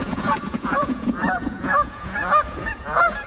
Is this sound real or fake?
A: fake